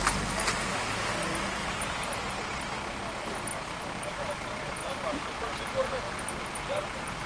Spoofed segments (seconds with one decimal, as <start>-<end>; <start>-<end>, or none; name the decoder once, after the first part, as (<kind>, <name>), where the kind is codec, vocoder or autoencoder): 1.6-2.2 (vocoder, BigVGAN v2); 4.8-6.4